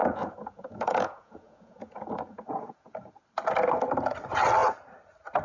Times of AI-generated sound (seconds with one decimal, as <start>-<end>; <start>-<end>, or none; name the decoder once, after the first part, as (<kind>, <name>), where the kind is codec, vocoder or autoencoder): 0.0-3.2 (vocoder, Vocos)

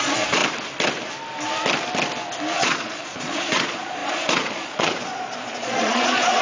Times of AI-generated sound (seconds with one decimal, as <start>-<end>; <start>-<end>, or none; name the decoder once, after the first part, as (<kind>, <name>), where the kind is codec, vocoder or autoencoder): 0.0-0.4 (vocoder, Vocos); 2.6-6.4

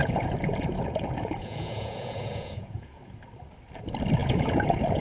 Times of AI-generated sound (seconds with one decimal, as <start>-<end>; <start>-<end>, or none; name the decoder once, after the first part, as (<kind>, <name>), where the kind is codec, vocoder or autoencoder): 0.0-3.0 (vocoder, Vocos); 4.2-5.0